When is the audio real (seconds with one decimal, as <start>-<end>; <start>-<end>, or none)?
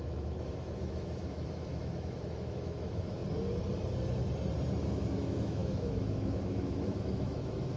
3.2-4.8